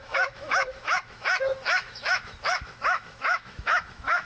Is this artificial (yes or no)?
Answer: yes